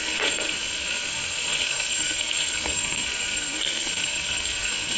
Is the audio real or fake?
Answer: fake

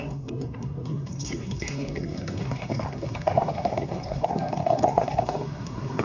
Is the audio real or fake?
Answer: fake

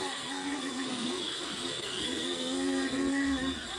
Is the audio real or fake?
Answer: fake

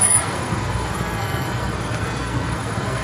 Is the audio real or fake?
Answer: fake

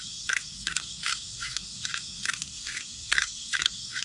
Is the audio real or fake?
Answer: fake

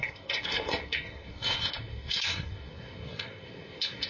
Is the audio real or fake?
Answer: fake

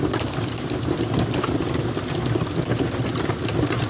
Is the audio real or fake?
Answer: real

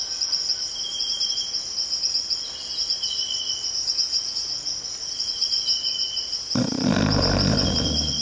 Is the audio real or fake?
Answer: real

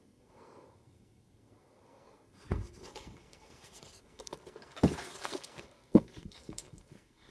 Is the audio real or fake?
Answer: fake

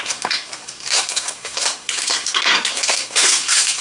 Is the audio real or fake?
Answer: fake